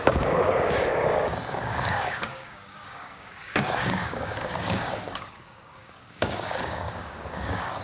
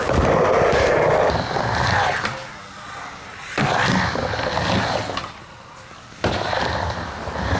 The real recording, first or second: second